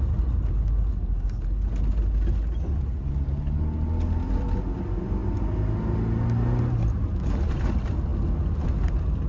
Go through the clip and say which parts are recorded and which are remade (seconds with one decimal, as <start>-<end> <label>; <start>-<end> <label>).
0.0-9.3 recorded